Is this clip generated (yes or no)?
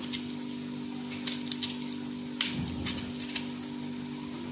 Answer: no